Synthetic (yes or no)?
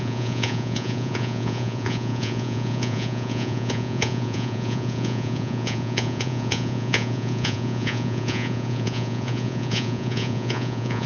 yes